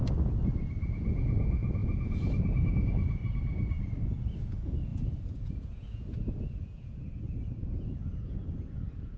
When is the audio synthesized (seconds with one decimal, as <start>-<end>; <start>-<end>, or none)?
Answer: 0.9-3.2; 4.4-9.2